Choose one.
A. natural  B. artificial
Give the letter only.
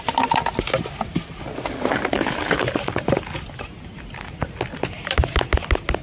A